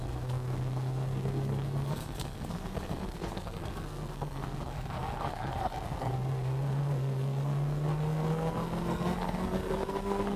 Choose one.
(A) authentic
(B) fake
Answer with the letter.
B